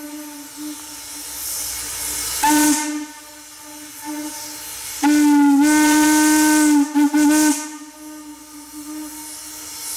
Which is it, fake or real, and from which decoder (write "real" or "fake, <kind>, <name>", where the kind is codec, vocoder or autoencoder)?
real